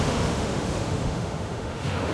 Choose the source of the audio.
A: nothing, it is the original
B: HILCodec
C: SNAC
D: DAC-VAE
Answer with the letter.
D